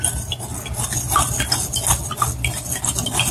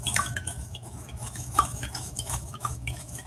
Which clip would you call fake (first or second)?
second